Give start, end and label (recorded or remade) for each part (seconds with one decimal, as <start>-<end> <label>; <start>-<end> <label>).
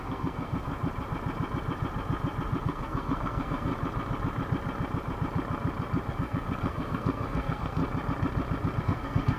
0.0-0.7 remade; 0.7-2.6 recorded; 2.6-3.7 remade; 3.7-6.1 recorded; 6.1-7.8 remade; 7.8-8.8 recorded; 8.8-9.4 remade